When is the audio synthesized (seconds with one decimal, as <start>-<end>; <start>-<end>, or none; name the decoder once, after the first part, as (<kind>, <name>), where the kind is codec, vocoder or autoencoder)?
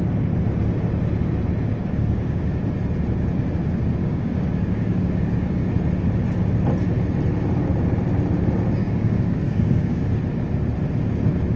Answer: 1.8-2.4 (codec, DAC); 4.0-5.5; 8.8-10.2